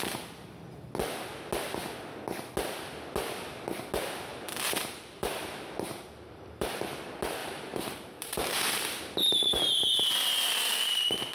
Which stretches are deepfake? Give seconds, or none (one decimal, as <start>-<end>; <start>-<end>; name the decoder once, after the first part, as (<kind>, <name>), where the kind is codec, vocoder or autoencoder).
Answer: 4.3-6.8 (vocoder, BigVGAN v2); 7.4-9.7